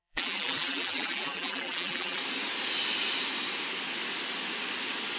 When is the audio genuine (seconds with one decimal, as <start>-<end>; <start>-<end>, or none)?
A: 2.2-5.2